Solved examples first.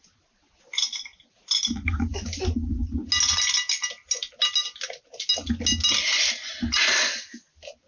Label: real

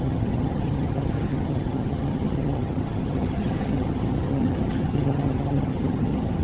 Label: fake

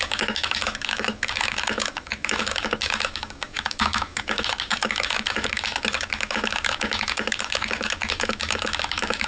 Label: fake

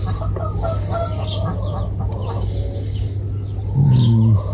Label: real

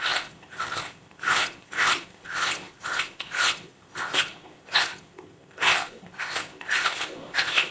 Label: fake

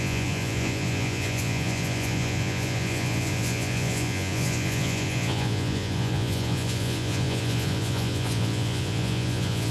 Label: fake